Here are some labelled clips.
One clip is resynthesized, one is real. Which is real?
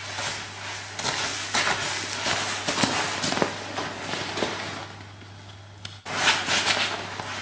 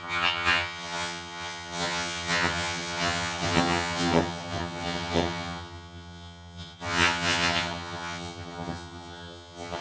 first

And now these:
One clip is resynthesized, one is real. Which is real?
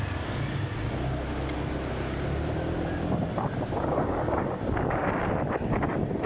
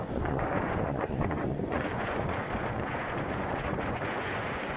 first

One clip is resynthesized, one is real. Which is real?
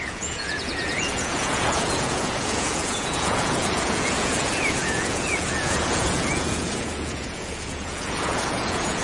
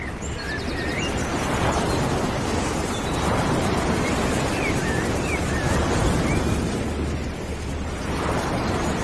second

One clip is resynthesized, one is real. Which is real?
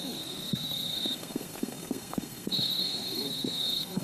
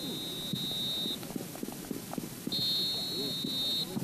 second